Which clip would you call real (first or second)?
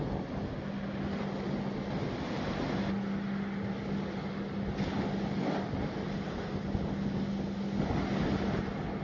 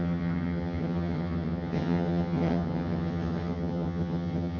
first